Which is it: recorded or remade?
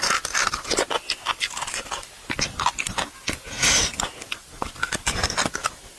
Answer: recorded